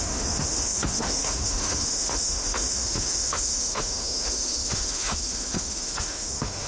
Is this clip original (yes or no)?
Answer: no